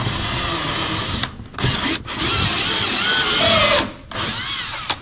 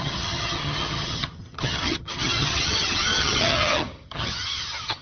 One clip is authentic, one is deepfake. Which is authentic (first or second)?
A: first